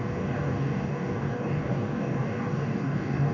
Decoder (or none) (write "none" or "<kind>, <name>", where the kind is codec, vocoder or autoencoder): codec, DAC